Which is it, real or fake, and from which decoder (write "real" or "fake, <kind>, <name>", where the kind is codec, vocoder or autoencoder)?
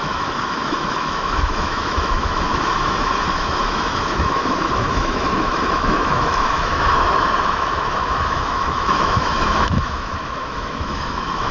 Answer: fake, autoencoder, DAC-VAE